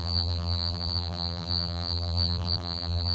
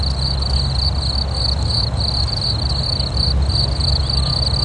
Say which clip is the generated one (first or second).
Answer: first